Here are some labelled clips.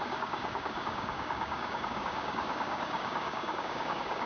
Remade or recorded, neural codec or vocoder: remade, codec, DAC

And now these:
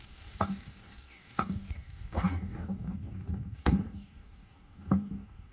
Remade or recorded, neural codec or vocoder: remade, codec, DAC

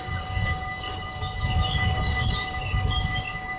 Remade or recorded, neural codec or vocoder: remade, codec, DAC